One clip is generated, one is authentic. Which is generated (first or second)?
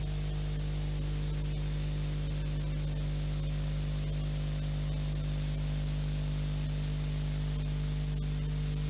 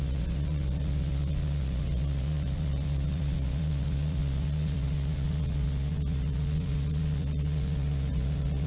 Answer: second